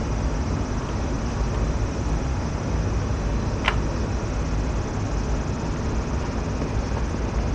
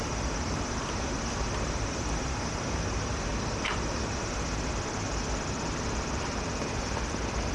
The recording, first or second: first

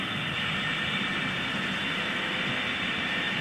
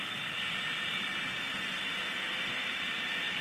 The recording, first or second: second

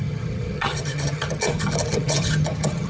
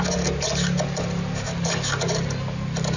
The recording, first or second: second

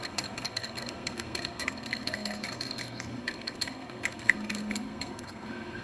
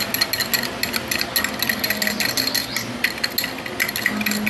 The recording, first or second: second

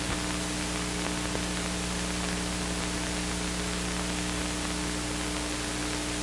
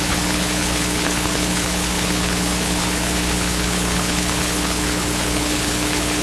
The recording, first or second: first